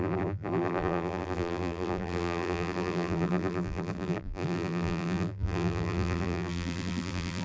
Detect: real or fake fake